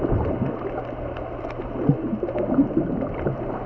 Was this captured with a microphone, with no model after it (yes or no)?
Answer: yes